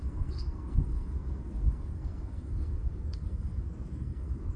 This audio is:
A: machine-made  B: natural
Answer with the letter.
A